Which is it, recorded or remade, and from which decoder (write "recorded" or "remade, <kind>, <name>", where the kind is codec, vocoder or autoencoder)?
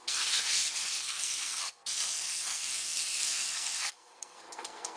remade, codec, SNAC